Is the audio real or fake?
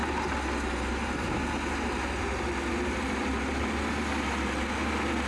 real